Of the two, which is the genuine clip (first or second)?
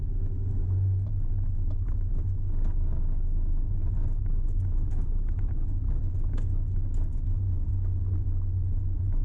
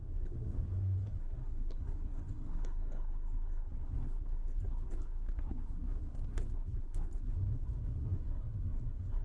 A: first